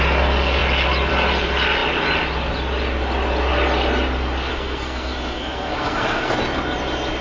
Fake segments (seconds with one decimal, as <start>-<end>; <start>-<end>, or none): 4.5-6.3